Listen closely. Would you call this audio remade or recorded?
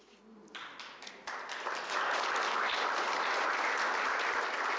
recorded